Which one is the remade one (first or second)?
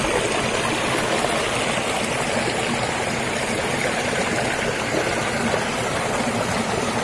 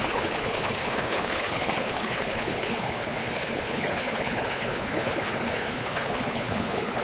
second